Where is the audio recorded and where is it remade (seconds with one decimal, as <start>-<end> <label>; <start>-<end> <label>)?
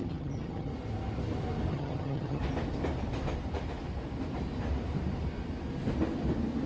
0.0-0.7 remade; 0.7-1.7 recorded; 1.7-2.4 remade; 2.4-6.7 recorded